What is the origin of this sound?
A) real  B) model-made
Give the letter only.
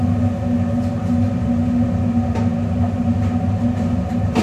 A